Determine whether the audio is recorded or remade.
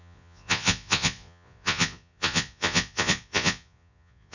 remade